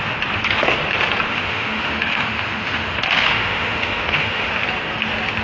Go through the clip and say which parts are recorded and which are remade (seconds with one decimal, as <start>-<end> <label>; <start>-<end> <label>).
0.0-1.3 recorded; 1.3-4.5 remade; 4.5-5.4 recorded